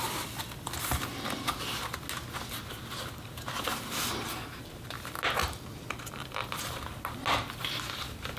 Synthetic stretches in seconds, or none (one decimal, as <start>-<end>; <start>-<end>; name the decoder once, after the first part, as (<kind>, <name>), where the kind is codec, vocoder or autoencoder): 3.7-4.8 (vocoder, BigVGAN v2); 5.4-6.5

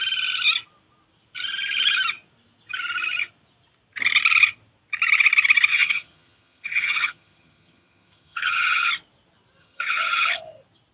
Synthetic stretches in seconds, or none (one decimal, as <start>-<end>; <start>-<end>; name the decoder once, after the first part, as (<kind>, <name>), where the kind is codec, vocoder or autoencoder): 5.7-8.9 (vocoder, HiFi-GAN); 9.6-10.4

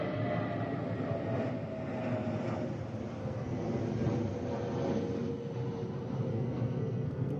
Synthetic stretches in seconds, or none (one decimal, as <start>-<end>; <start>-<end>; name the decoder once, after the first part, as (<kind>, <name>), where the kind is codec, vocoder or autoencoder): 3.2-3.8 (codec, SNAC); 6.3-7.4

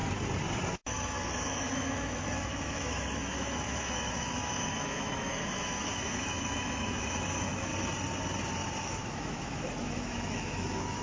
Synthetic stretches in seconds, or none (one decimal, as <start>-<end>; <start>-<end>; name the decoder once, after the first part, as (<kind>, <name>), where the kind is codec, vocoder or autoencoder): 0.7-7.7 (autoencoder, DAC-VAE); 8.8-11.0